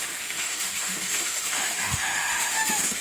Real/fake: fake